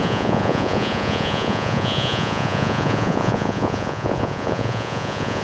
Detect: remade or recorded remade